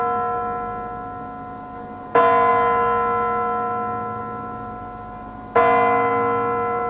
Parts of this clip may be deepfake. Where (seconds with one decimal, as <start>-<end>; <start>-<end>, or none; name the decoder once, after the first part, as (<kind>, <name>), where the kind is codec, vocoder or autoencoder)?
none